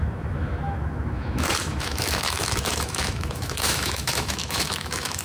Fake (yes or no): yes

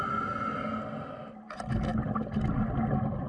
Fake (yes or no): no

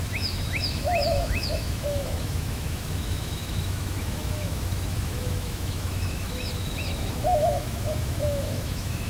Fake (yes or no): yes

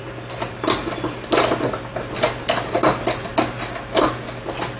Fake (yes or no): no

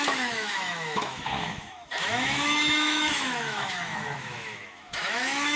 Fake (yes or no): yes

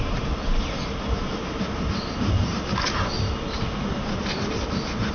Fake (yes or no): no